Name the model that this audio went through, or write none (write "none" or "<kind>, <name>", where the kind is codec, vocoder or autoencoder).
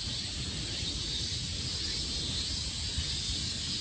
none